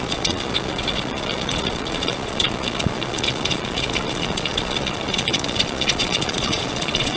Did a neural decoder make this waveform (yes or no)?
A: yes